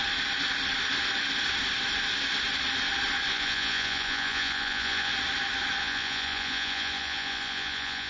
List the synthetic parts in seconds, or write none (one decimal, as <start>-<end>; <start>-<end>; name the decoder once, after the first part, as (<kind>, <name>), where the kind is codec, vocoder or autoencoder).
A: 3.3-5.1 (vocoder, Vocos); 5.8-8.1